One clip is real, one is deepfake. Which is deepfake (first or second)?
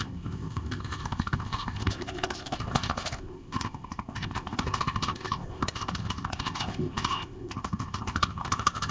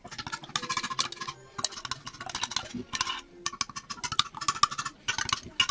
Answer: first